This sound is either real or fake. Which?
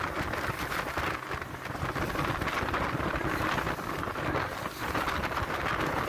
real